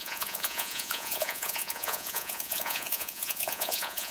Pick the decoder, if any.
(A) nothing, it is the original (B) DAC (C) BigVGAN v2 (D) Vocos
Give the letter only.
D